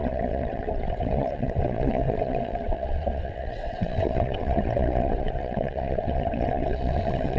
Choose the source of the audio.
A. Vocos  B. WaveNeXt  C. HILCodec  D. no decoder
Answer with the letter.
B